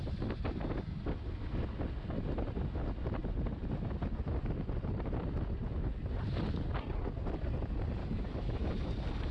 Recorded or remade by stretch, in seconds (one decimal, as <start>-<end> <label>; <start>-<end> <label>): 0.0-8.0 recorded; 8.0-8.7 remade; 8.7-9.3 recorded